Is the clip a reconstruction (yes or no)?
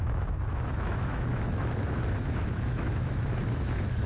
yes